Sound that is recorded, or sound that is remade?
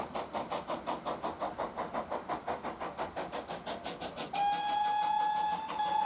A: recorded